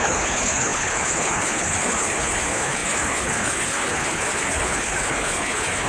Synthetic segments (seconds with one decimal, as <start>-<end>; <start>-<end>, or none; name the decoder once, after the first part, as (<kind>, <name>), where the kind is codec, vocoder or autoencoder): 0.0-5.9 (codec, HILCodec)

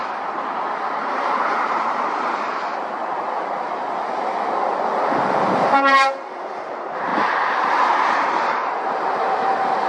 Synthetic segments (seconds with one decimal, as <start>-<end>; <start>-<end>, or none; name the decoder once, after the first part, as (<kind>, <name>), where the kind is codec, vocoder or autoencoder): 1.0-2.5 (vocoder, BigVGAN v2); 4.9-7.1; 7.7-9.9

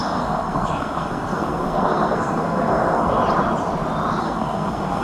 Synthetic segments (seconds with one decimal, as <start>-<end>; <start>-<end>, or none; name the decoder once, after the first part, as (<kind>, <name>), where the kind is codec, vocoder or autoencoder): 0.0-3.2 (codec, SNAC); 4.2-5.0